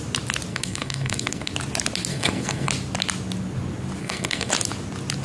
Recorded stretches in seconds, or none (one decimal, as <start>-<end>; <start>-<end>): 0.0-0.5; 1.5-2.1; 2.7-4.0; 4.5-5.2